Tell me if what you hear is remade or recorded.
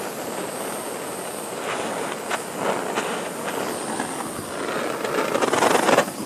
recorded